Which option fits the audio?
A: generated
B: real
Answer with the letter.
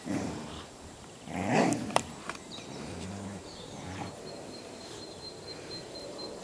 A